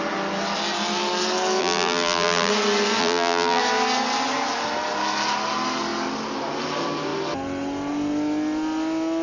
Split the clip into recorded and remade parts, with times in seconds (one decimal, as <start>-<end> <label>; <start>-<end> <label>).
0.0-1.6 recorded; 1.6-2.5 remade; 2.5-3.0 recorded; 3.0-3.6 remade; 3.6-9.2 recorded